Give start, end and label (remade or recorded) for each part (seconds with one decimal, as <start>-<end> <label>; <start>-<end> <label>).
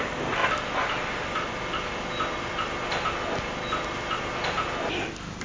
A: 0.0-5.4 recorded